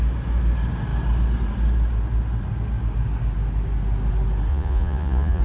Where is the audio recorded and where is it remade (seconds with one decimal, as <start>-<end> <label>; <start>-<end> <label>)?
0.0-4.5 recorded; 4.5-5.4 remade